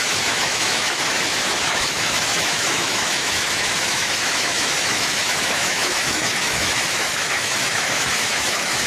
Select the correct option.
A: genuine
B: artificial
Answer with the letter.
B